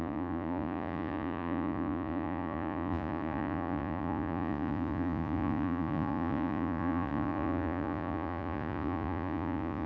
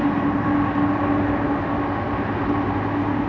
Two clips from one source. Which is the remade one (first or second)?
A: first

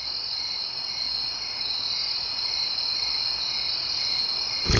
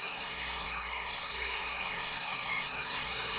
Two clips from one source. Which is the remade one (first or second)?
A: second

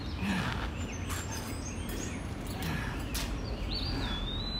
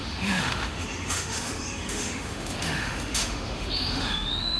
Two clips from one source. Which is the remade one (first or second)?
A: second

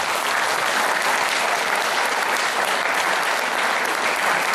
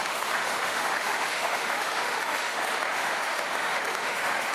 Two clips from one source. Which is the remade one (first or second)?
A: second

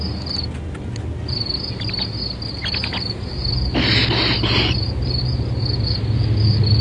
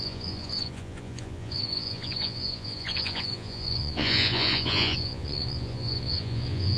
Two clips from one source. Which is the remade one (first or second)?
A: second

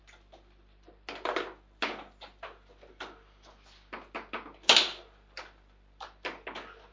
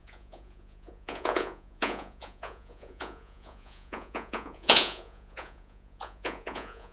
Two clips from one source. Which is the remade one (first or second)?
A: second